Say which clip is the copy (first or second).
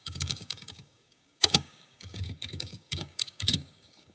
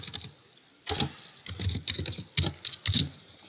first